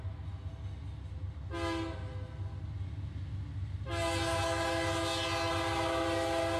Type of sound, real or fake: real